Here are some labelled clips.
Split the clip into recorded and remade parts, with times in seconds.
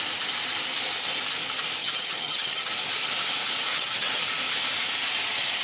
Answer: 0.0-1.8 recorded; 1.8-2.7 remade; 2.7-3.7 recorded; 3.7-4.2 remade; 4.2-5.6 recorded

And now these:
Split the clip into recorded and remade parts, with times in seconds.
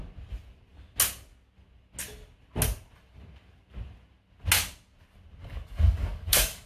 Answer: 0.0-5.4 recorded; 5.4-6.7 remade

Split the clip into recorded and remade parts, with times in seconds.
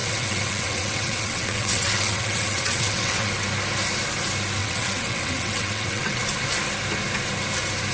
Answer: 0.0-3.3 remade; 3.3-4.6 recorded; 4.6-6.2 remade; 6.2-7.9 recorded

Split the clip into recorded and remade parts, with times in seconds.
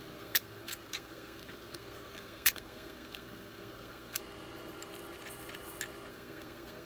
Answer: 0.0-4.2 remade; 4.2-6.1 recorded; 6.1-6.9 remade